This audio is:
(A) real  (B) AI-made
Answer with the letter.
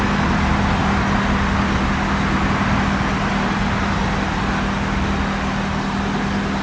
A